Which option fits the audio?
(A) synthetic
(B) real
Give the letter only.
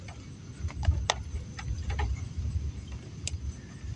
B